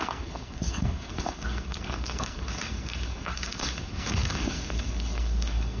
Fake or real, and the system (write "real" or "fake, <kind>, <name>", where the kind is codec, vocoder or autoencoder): fake, codec, SNAC